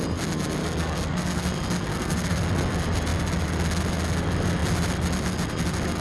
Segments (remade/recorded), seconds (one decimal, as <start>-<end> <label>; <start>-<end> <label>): 0.0-0.6 recorded; 0.6-1.4 remade; 1.4-1.9 recorded; 1.9-2.4 remade; 2.4-6.0 recorded